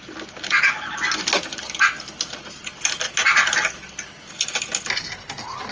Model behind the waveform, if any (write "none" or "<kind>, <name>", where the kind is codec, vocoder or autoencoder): none